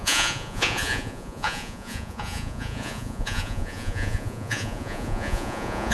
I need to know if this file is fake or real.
fake